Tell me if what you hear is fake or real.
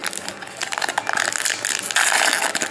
real